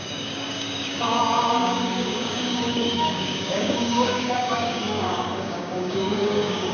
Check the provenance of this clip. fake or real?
fake